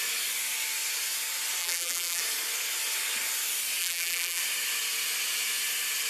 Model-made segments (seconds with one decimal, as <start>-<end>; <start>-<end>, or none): 1.6-2.2; 3.8-4.4